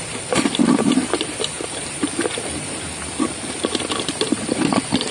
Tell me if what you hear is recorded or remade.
remade